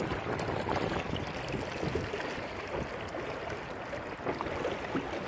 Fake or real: real